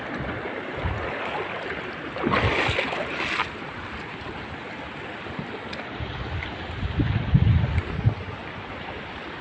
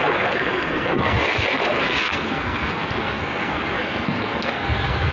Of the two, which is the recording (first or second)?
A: first